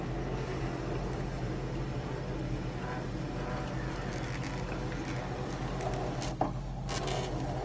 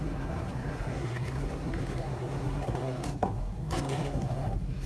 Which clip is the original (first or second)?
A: first